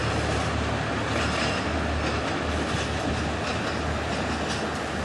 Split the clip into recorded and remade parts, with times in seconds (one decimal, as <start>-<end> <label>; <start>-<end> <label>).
0.0-5.0 recorded